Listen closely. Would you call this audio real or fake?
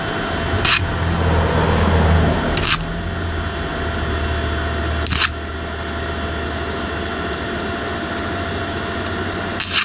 real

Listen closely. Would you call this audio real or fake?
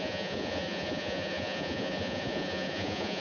fake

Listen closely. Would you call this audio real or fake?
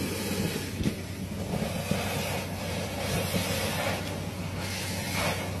real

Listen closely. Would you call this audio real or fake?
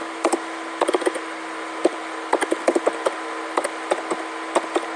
real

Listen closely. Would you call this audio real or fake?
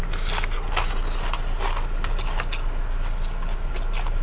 real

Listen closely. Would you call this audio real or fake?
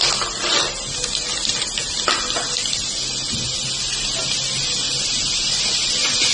real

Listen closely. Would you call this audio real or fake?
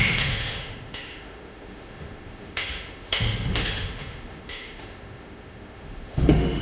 fake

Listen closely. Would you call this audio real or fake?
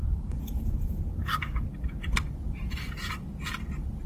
real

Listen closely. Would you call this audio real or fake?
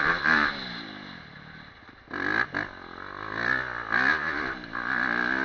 real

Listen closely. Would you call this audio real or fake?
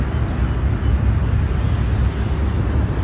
real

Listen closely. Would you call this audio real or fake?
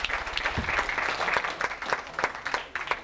real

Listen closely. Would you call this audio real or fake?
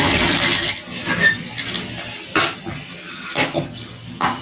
fake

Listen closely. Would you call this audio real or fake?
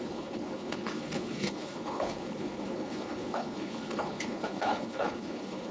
fake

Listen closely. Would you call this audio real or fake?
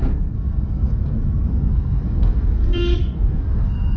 fake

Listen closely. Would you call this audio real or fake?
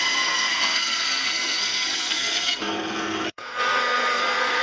fake